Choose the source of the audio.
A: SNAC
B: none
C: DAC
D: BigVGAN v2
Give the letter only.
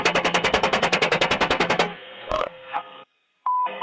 A